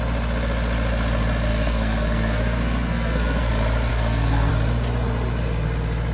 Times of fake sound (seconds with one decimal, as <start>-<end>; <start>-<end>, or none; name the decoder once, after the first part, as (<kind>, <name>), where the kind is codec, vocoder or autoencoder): 1.5-3.5 (codec, SNAC); 3.9-4.5